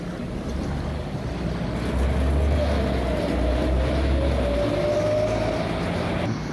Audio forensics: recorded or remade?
recorded